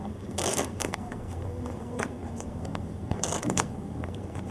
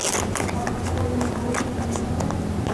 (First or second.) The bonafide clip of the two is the second